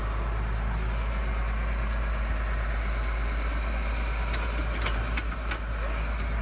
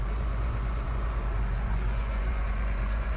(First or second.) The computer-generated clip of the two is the second